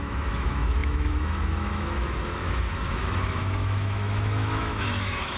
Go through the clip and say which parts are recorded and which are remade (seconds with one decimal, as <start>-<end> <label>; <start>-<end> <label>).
0.0-5.4 remade